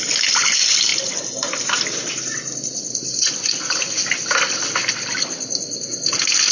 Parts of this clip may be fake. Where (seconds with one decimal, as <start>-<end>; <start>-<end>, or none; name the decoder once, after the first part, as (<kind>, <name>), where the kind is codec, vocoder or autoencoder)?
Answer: none

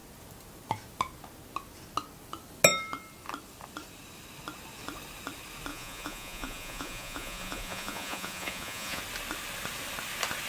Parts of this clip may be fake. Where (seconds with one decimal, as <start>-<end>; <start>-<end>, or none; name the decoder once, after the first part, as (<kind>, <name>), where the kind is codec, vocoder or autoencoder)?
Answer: 5.7-9.0 (vocoder, Vocos)

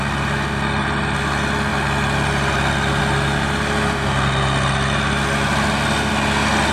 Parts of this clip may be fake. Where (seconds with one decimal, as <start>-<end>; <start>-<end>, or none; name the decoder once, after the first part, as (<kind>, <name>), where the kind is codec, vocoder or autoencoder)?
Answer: none

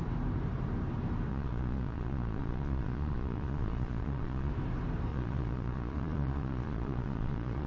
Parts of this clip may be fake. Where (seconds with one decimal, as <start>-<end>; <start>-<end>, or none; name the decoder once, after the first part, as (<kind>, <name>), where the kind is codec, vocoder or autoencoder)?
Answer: 1.3-4.5 (vocoder, Vocos); 5.1-7.7

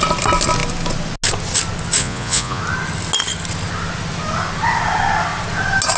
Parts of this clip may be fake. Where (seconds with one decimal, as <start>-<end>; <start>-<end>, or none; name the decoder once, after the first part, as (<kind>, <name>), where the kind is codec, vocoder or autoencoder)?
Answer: 2.0-2.6 (vocoder, Vocos)